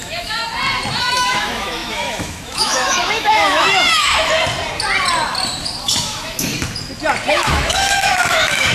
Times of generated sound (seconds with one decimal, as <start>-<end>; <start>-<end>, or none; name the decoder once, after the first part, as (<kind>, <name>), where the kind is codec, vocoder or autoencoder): 0.0-0.4 (autoencoder, DAC-VAE); 1.0-4.3; 5.8-6.5; 7.3-8.7